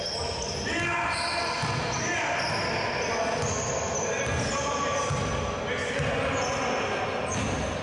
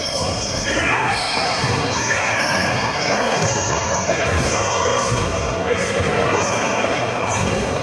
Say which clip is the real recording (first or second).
first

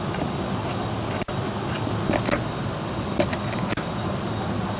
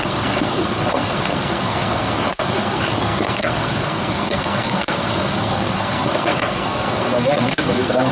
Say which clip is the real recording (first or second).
first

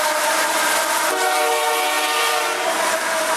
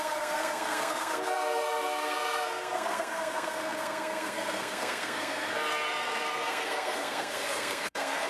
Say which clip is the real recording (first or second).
first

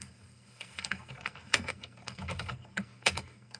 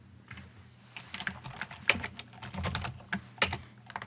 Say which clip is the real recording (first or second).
second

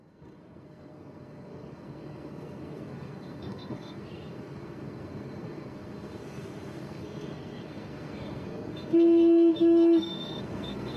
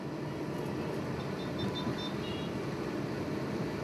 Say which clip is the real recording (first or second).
second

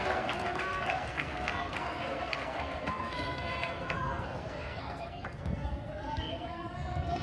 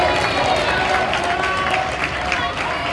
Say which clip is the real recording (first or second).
second